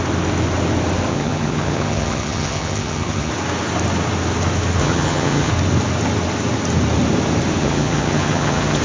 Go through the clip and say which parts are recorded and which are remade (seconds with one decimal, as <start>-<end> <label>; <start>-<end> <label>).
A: 0.0-1.1 recorded; 1.1-3.3 remade; 3.3-4.8 recorded; 4.8-5.5 remade; 5.5-7.6 recorded; 7.6-8.8 remade